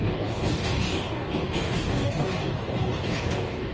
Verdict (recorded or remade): remade